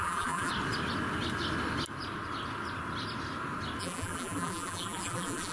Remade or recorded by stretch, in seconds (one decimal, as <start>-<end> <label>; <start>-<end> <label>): 0.0-0.5 remade; 0.5-3.8 recorded; 3.8-5.5 remade